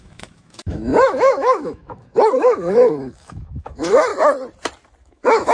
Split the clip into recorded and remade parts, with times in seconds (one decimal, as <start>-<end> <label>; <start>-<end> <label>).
0.0-4.1 remade; 4.1-5.0 recorded; 5.0-5.5 remade